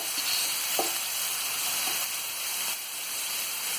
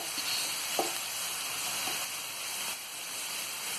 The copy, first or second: first